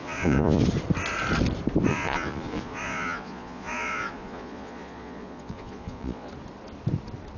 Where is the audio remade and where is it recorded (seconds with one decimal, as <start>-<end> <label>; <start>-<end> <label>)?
0.0-0.6 remade; 0.6-1.9 recorded; 1.9-6.3 remade; 6.3-7.4 recorded